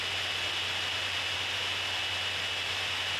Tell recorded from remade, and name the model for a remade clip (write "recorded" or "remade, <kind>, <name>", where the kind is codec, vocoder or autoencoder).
recorded